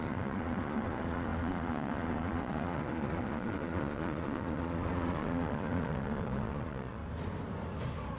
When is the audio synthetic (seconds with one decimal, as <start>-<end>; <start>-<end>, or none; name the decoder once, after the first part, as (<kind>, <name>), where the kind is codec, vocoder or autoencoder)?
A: 0.0-7.0 (vocoder, Vocos)